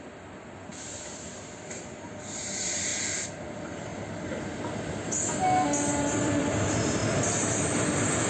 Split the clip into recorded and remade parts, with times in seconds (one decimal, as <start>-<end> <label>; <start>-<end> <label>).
0.0-2.9 remade; 2.9-3.4 recorded; 3.4-3.9 remade; 3.9-6.0 recorded; 6.0-8.3 remade

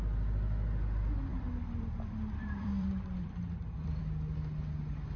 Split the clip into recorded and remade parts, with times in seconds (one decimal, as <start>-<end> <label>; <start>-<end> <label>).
0.0-1.3 recorded; 1.3-4.0 remade; 4.0-5.2 recorded

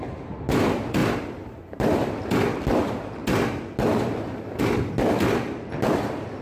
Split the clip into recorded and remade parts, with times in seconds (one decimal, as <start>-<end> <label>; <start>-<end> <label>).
0.0-1.0 recorded; 1.0-2.2 remade; 2.2-6.4 recorded